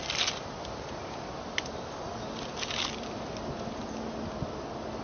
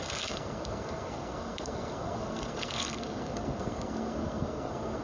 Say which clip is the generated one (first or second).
second